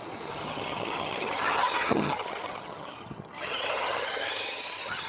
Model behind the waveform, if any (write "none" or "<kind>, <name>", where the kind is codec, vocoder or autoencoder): vocoder, HiFi-GAN